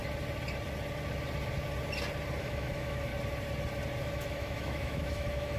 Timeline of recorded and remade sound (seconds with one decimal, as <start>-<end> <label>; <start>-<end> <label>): 0.0-2.4 recorded; 2.4-3.1 remade; 3.1-4.0 recorded; 4.0-5.6 remade